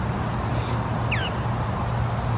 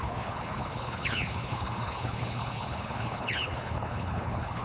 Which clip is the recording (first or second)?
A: first